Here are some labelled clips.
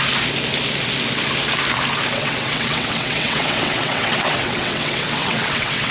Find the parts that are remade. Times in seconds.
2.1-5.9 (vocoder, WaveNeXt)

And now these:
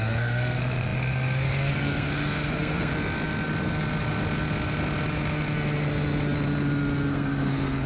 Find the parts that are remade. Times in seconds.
0.0-2.9 (codec, SNAC); 7.1-7.9

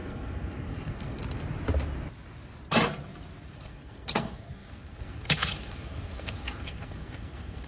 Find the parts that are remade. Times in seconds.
0.0-1.2 (codec, SNAC); 3.5-7.7

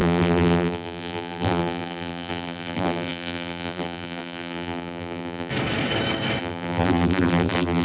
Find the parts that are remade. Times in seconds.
0.0-5.5 (vocoder, BigVGAN v2); 6.4-7.8

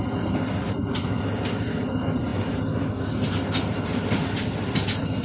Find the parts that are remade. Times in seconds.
none